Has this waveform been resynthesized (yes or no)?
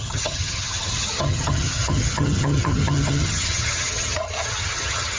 yes